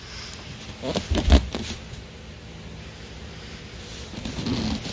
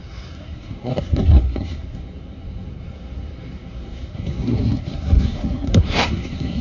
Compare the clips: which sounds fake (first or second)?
second